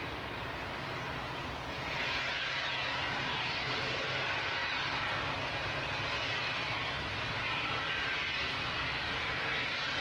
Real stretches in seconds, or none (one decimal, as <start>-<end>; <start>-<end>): 0.0-1.2; 3.0-10.0